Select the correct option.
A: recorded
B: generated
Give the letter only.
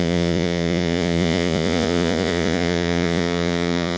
B